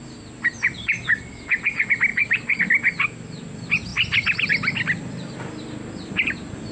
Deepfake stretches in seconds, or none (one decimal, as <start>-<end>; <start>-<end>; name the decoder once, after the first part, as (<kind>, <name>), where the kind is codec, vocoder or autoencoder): 2.1-2.6 (vocoder, BigVGAN v2)